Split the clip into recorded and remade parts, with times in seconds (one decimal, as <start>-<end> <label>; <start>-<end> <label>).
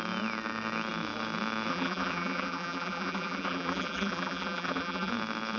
0.0-1.7 recorded; 1.7-5.1 remade; 5.1-5.6 recorded